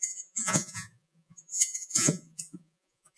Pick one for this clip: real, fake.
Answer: fake